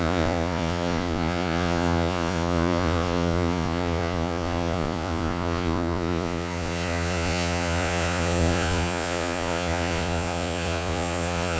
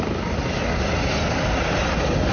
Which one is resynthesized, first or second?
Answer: first